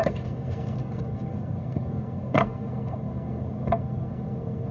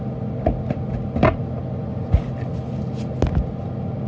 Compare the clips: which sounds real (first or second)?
second